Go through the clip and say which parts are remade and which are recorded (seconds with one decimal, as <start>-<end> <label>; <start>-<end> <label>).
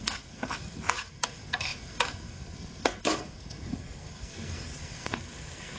0.0-5.8 remade